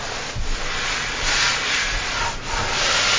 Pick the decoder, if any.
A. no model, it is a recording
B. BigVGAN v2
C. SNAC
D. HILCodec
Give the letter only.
A